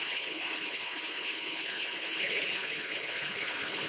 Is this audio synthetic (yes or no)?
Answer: yes